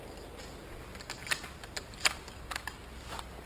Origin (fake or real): real